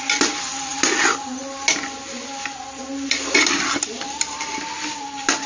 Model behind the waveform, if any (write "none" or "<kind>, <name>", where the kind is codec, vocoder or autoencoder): none